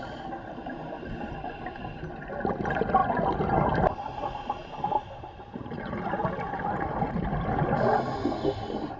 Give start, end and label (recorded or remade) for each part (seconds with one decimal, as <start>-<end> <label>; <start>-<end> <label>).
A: 0.0-9.0 recorded